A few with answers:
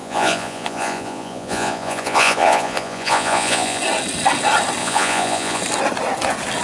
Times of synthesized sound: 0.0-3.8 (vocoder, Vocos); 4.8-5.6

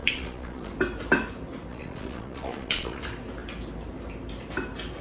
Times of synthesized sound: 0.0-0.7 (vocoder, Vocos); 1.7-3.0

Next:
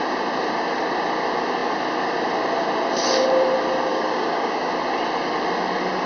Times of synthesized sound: 3.9-4.7 (codec, DAC)

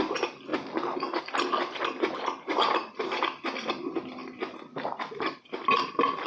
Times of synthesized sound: 0.5-1.2 (vocoder, BigVGAN v2); 4.2-6.3

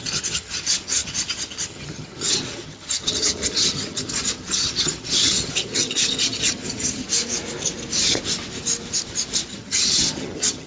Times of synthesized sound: 0.0-7.1 (vocoder, HiFi-GAN); 9.5-10.7